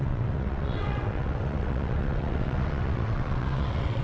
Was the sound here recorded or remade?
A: remade